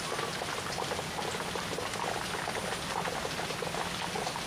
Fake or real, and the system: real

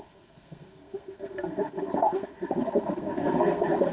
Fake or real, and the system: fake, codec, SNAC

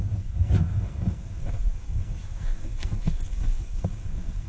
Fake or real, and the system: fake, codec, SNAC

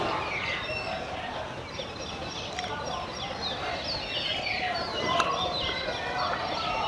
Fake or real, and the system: real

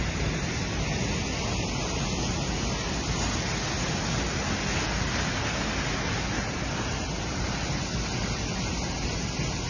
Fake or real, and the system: real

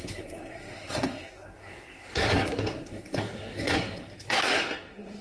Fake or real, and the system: fake, codec, SNAC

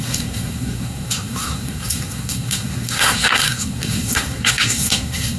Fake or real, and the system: fake, codec, SNAC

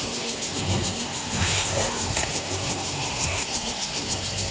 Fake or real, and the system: fake, codec, SNAC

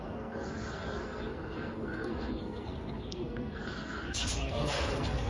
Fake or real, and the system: fake, codec, SNAC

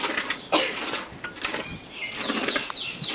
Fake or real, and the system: real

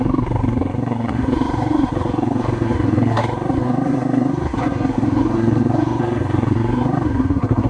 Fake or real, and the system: fake, codec, SNAC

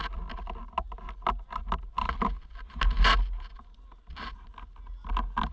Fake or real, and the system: real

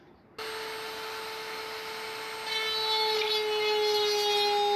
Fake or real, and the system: real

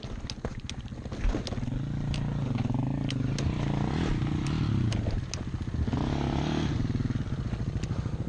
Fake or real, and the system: real